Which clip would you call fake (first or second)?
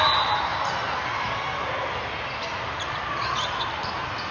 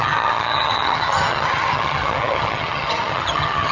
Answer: second